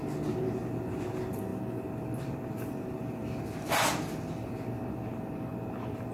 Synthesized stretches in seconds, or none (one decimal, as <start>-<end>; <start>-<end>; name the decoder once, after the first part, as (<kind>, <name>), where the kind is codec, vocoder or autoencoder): none